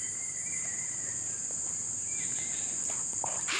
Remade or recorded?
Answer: remade